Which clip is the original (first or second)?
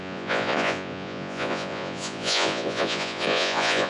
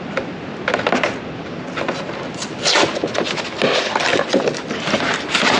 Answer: second